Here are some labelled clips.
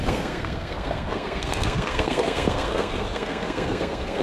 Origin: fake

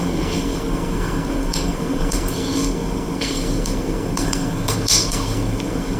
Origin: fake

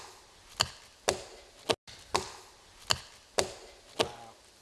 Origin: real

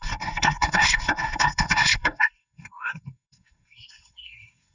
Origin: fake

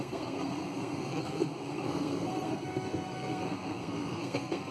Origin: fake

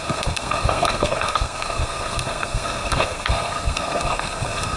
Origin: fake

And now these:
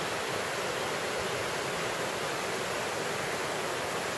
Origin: real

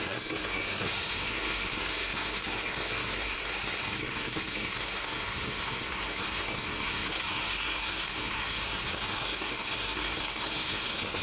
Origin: fake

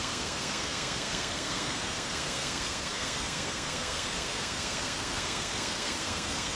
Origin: fake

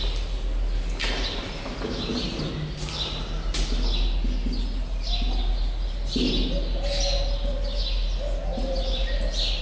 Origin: real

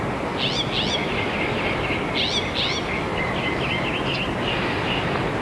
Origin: real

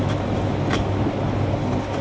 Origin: real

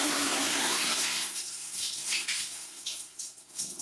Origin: fake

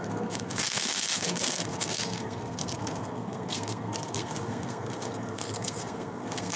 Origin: fake